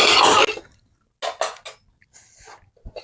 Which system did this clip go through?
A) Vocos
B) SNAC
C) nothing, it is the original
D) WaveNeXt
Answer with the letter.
C